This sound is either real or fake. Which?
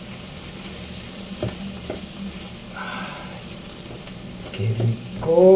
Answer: real